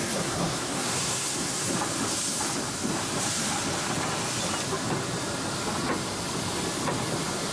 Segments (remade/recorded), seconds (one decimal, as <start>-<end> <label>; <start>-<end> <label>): 0.0-1.7 remade; 1.7-7.5 recorded